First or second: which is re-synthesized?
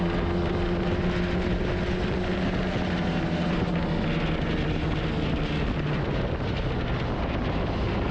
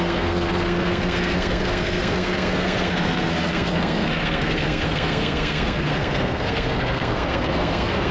second